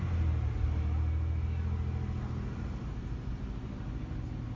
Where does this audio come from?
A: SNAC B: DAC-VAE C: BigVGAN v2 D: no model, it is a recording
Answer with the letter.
D